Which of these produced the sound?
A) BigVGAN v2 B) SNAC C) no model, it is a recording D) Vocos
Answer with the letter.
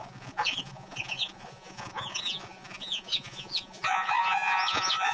D